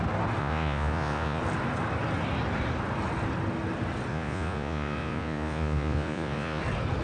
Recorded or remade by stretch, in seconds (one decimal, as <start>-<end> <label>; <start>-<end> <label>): 0.0-0.4 recorded; 0.4-1.4 remade; 1.4-4.1 recorded; 4.1-6.6 remade; 6.6-7.0 recorded